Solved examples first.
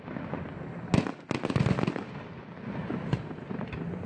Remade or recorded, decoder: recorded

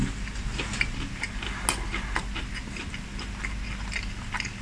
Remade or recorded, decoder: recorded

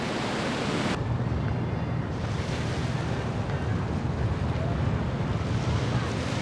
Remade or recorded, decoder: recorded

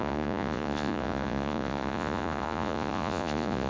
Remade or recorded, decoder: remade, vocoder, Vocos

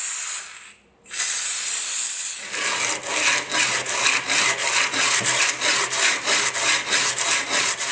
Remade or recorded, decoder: recorded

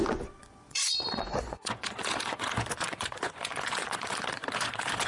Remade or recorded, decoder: remade, vocoder, Vocos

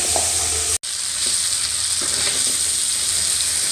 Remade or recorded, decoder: recorded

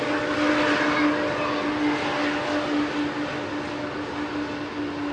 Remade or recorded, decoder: recorded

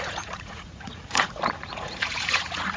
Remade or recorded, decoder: remade, vocoder, Vocos